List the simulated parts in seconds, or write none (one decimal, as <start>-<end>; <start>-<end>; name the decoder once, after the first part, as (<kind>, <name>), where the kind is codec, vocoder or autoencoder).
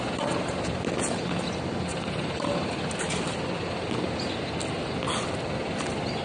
1.9-2.7 (vocoder, BigVGAN v2)